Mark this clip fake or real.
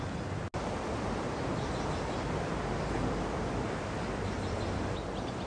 real